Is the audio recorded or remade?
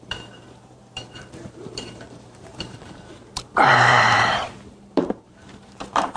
remade